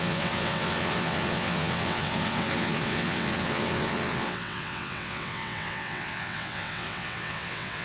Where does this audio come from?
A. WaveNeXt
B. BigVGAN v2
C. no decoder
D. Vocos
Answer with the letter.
A